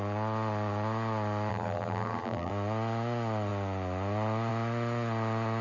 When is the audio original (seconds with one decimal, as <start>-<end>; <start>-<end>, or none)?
0.0-1.5; 2.5-5.6